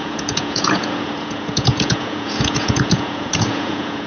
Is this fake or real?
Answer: fake